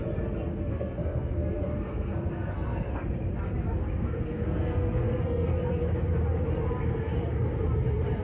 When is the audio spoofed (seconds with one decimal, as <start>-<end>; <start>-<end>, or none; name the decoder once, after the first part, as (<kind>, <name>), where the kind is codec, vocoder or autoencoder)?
0.5-3.3 (codec, SNAC); 3.8-5.5